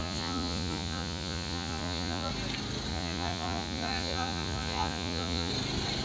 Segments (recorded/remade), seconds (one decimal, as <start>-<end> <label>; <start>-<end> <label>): 0.0-2.3 remade; 2.3-2.9 recorded; 2.9-5.5 remade; 5.5-6.0 recorded